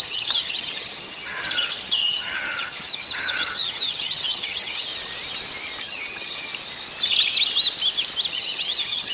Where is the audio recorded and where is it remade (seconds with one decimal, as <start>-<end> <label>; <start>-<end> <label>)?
0.0-4.9 remade; 4.9-5.8 recorded; 5.8-6.5 remade; 6.5-8.3 recorded; 8.3-9.1 remade